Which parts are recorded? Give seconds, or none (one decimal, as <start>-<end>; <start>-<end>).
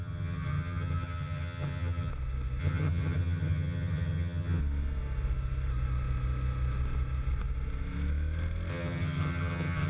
2.1-2.6; 4.6-8.7